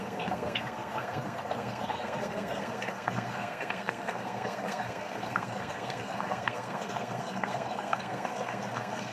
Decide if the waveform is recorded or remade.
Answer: remade